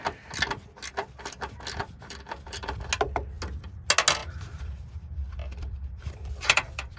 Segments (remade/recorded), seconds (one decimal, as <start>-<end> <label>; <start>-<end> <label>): 0.0-1.0 recorded; 1.0-2.9 remade; 2.9-4.2 recorded; 4.2-4.9 remade; 4.9-5.4 recorded; 5.4-7.0 remade